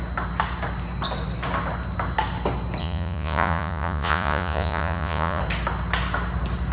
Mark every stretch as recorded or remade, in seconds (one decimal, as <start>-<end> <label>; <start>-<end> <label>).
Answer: 0.0-2.8 recorded; 2.8-5.4 remade; 5.4-6.7 recorded